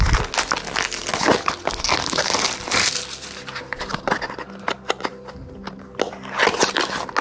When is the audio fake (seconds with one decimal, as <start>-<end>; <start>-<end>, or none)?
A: none